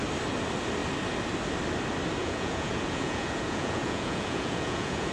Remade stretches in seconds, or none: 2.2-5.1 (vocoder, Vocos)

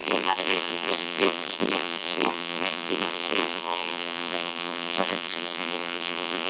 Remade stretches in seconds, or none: 0.0-6.5 (vocoder, BigVGAN v2)

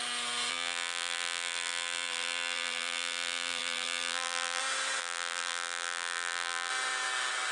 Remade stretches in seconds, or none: 0.5-4.6 (vocoder, BigVGAN v2); 5.0-6.7

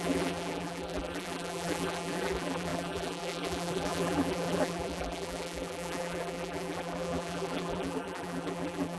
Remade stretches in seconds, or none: 0.0-9.0 (vocoder, BigVGAN v2)

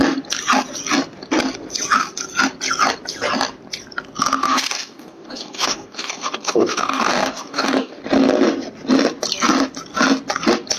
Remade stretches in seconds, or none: 4.4-8.0 (codec, DAC)

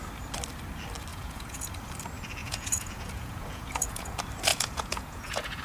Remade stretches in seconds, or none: 1.1-1.7 (vocoder, Vocos); 2.4-4.1; 4.5-5.6